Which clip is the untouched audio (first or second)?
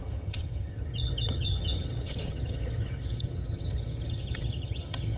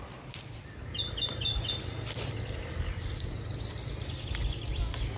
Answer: second